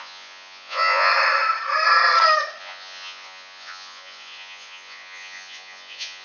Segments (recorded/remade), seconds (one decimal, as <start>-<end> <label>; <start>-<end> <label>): 0.0-1.1 remade; 1.1-2.6 recorded; 2.6-6.2 remade